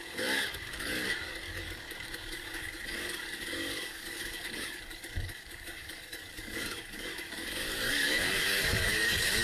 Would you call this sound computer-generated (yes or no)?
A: yes